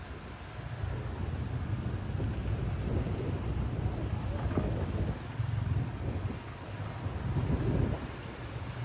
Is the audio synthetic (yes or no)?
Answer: no